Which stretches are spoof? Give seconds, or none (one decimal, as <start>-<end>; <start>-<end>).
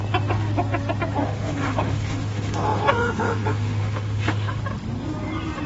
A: 1.2-4.6